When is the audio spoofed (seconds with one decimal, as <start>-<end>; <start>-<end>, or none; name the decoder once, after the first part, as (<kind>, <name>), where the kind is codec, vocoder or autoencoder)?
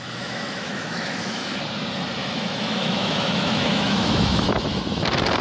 0.0-1.5 (autoencoder, DAC-VAE); 2.2-4.6